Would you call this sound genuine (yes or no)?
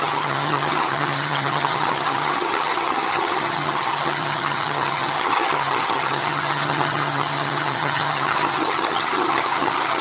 no